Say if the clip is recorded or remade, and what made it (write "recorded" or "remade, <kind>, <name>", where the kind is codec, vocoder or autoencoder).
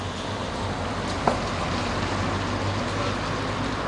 recorded